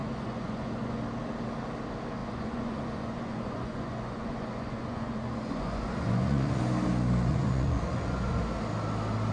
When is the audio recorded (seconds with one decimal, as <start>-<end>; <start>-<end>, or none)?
1.0-2.2; 6.6-7.3; 8.4-9.3